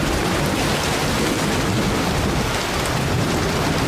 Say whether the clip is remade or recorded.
recorded